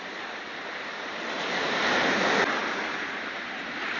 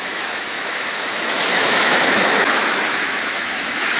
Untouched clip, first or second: first